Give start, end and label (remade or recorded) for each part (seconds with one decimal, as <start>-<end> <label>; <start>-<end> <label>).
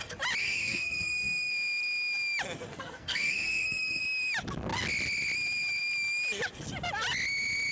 0.0-0.4 recorded; 0.4-1.5 remade; 1.5-2.7 recorded; 2.7-4.0 remade; 4.0-7.7 recorded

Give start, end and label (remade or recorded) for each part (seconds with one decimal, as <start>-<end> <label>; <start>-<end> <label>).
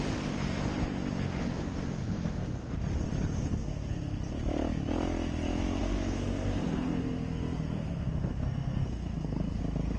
0.0-2.0 recorded; 2.0-2.7 remade; 2.7-3.6 recorded; 3.6-4.2 remade; 4.2-5.8 recorded; 5.8-9.6 remade; 9.6-10.0 recorded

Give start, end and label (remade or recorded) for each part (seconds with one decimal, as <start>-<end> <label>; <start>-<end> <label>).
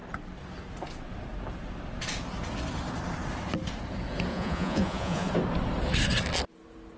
0.0-4.3 recorded; 4.3-5.3 remade; 5.3-7.0 recorded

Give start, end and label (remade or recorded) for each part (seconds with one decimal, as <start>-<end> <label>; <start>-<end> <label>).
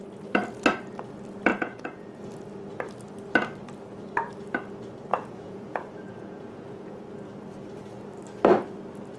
0.0-1.5 recorded; 1.5-2.2 remade; 2.2-5.1 recorded; 5.1-7.0 remade; 7.0-9.2 recorded